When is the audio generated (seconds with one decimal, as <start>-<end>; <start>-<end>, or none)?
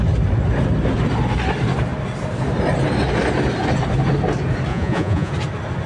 4.7-5.3